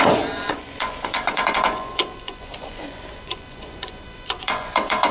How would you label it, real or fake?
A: fake